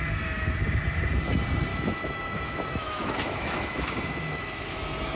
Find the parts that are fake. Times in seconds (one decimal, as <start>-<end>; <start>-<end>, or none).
1.7-4.8